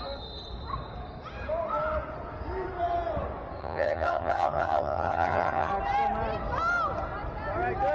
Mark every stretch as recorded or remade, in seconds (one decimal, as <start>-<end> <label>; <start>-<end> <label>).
0.0-3.6 recorded; 3.6-5.7 remade; 5.7-7.9 recorded